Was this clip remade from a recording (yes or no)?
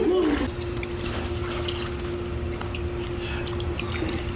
no